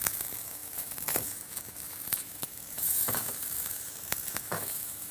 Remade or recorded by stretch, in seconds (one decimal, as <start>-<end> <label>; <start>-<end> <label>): 0.0-5.1 remade